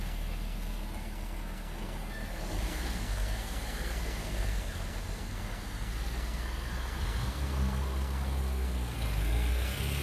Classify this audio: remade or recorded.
remade